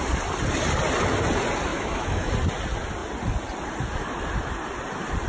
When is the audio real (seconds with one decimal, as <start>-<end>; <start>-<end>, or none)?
0.0-1.7; 2.3-5.3